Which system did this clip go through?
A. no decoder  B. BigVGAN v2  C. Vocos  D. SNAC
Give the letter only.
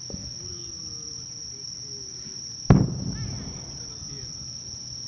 A